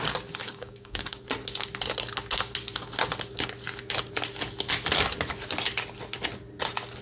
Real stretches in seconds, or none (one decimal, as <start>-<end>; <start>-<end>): 0.0-0.4; 1.2-7.0